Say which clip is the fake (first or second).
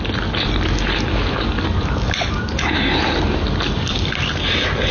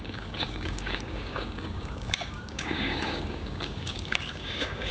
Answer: second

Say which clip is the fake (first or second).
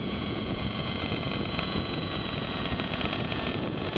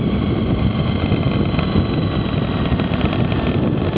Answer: first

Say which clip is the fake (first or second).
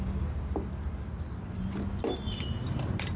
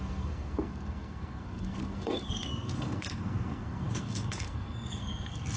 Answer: second